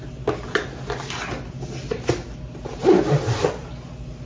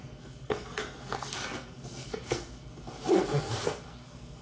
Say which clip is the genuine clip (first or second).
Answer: first